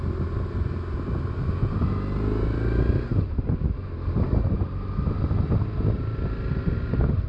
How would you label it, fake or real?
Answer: real